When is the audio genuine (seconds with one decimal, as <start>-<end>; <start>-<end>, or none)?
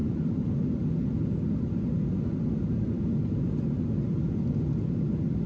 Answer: 0.0-5.5